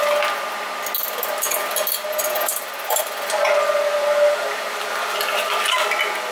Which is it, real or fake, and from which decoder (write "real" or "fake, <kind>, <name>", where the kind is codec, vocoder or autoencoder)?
real